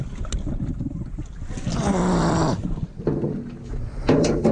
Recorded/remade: recorded